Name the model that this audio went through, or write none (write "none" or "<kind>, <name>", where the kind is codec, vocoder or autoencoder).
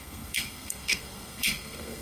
codec, SNAC